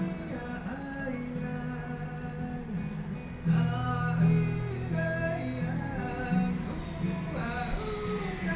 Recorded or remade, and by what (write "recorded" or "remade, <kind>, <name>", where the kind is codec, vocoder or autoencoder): recorded